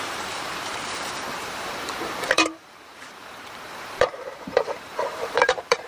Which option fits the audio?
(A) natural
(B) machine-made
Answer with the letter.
B